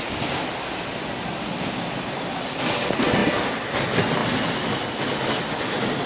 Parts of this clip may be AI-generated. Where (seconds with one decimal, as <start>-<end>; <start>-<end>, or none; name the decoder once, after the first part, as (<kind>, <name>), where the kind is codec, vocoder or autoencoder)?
none